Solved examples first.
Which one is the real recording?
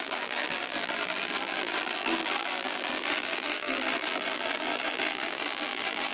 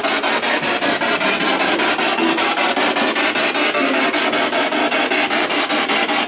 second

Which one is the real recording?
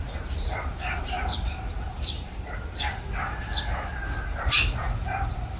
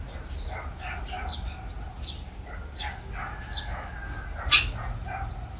second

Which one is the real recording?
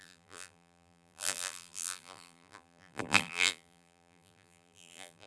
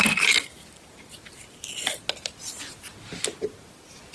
second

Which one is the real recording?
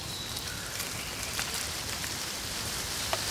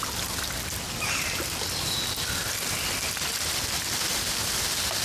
second